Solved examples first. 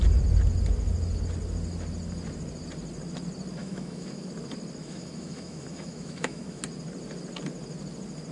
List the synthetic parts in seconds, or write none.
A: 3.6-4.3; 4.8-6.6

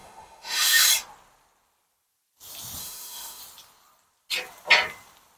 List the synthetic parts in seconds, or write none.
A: 0.0-0.9; 2.8-3.4

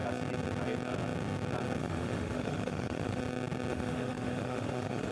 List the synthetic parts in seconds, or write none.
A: 1.8-3.2; 3.7-5.1

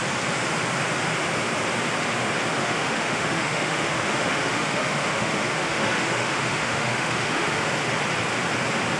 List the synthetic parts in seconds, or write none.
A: 2.6-7.6

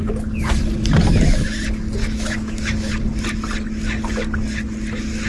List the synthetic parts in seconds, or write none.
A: 2.0-2.9